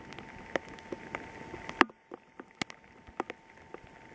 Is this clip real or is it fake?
real